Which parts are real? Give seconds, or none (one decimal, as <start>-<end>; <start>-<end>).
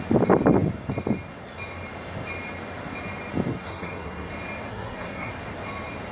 0.0-3.5; 4.3-4.7; 5.3-6.1